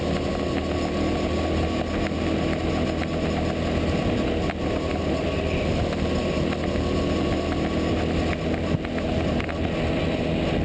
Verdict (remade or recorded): recorded